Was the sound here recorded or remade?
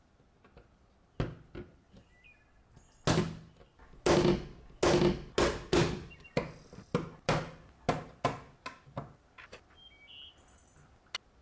recorded